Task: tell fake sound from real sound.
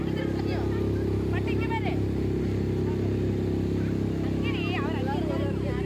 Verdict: real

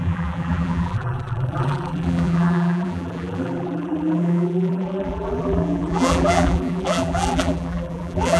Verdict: fake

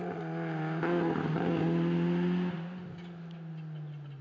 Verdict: real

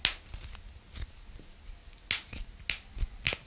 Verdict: real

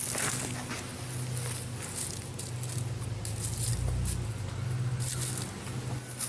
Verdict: real